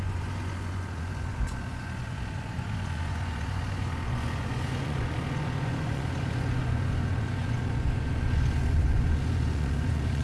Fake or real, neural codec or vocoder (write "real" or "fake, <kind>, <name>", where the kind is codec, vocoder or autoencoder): fake, vocoder, Vocos